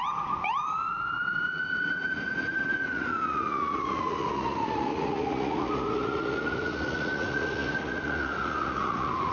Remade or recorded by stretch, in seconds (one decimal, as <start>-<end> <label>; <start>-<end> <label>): 0.0-9.3 remade